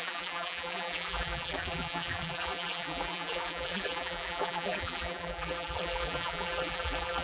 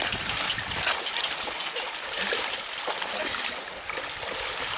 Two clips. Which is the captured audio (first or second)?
second